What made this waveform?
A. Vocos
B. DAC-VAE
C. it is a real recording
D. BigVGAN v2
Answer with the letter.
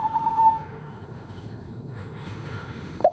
B